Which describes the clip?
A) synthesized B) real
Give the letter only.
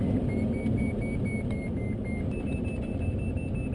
B